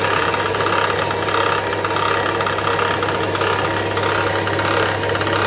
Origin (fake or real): real